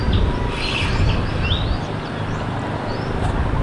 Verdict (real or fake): real